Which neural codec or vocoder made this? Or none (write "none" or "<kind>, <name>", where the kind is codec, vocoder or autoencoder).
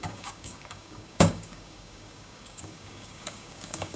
codec, DAC